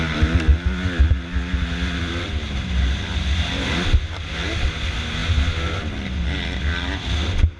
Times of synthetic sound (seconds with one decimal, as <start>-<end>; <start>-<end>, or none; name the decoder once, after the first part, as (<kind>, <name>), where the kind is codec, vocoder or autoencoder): none